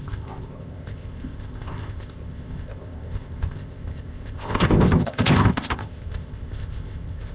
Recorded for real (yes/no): no